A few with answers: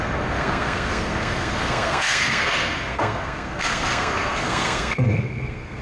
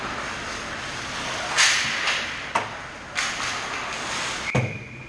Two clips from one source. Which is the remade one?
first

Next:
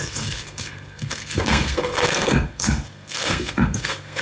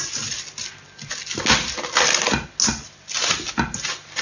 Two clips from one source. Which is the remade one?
first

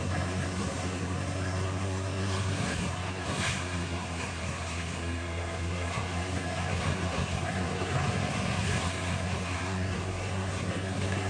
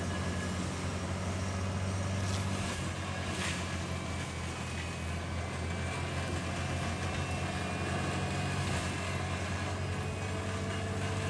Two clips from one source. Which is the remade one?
first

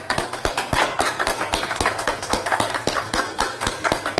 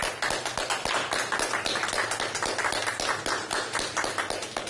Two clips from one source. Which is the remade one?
first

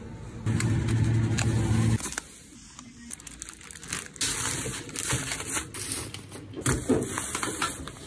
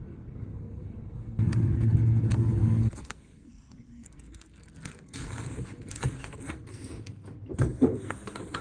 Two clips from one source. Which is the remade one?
second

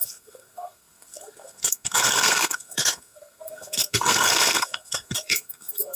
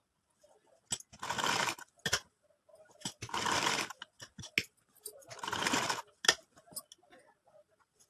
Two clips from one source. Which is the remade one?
first